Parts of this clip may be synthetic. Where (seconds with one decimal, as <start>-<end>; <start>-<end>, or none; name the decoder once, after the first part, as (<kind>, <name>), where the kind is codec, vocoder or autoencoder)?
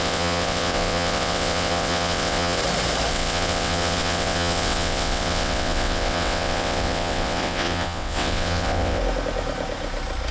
0.0-2.6 (vocoder, WaveNeXt); 3.1-9.0